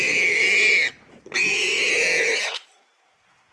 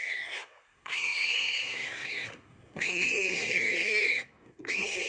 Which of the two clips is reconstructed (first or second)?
second